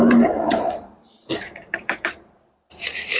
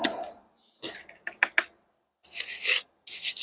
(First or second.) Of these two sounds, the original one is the second